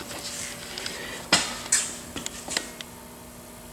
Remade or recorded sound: recorded